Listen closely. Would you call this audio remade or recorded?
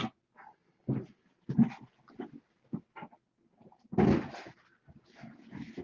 recorded